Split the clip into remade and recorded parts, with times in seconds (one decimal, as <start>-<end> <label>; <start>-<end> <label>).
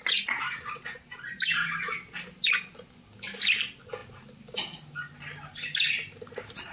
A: 0.0-6.7 recorded